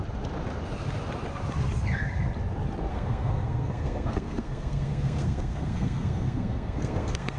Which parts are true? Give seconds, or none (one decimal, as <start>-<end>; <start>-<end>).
0.0-2.9